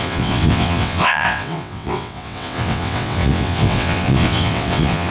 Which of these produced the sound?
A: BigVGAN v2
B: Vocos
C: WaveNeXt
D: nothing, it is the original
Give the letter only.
C